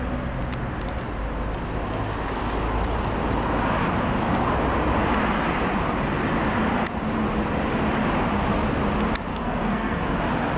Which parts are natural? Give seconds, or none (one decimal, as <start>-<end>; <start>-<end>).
0.0-9.3; 10.0-10.6